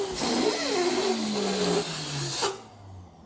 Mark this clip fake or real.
real